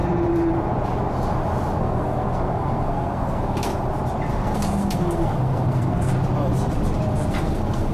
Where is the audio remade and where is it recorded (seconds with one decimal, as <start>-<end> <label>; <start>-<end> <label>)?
0.0-1.8 recorded; 1.8-3.7 remade; 3.7-4.3 recorded; 4.3-6.1 remade; 6.1-7.3 recorded; 7.3-7.9 remade

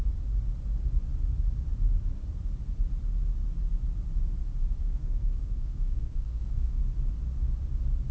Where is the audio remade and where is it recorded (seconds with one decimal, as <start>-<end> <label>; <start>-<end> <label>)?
0.0-4.8 recorded; 4.8-6.8 remade; 6.8-8.1 recorded

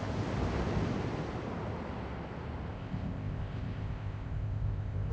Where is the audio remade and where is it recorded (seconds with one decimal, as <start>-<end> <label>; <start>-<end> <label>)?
0.0-2.7 recorded; 2.7-5.1 remade

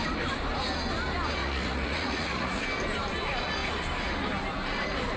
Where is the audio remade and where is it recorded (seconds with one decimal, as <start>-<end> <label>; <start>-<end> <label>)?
0.0-1.4 recorded; 1.4-2.6 remade; 2.6-5.2 recorded

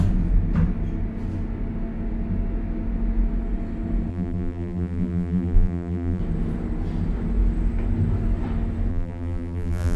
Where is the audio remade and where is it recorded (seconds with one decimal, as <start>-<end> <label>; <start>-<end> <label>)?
0.0-4.1 recorded; 4.1-6.2 remade; 6.2-8.9 recorded; 8.9-10.0 remade